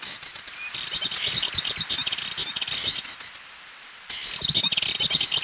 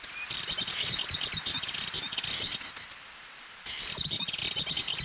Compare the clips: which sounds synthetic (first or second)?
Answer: second